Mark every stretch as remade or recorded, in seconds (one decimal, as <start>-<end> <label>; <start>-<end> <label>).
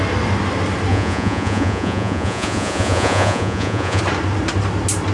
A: 0.0-0.9 recorded; 0.9-4.0 remade; 4.0-5.1 recorded